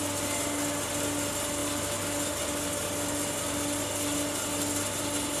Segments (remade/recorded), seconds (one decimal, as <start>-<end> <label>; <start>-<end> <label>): 0.0-5.4 recorded